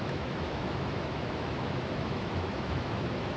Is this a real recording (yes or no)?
no